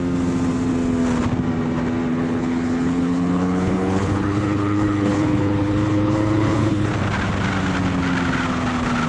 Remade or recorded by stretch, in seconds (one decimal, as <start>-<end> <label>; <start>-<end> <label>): 0.0-2.1 recorded; 2.1-6.9 remade; 6.9-9.1 recorded